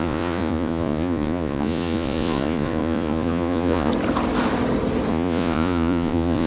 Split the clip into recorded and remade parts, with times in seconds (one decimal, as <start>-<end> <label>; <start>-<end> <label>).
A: 0.0-3.9 remade; 3.9-5.1 recorded; 5.1-6.5 remade

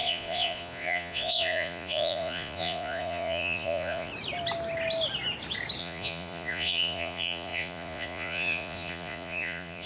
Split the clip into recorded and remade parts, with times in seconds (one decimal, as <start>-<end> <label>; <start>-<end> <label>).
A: 0.0-4.1 remade; 4.1-5.8 recorded; 5.8-9.9 remade

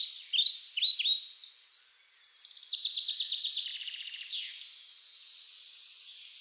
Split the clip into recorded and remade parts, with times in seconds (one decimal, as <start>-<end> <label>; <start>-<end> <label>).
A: 0.0-6.4 recorded

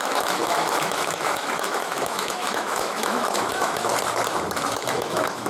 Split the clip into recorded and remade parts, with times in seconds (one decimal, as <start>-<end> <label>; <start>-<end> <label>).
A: 0.0-3.9 remade; 3.9-4.7 recorded; 4.7-5.5 remade